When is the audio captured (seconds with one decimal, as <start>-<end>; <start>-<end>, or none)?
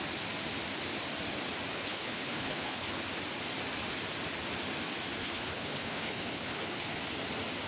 0.0-1.7; 3.0-5.2; 7.0-7.7